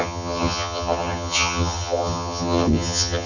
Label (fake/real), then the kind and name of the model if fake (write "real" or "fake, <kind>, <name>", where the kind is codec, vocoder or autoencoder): fake, vocoder, HiFi-GAN